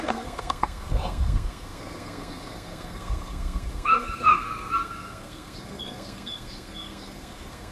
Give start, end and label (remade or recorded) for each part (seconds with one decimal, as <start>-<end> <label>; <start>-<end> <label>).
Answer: 0.0-7.7 remade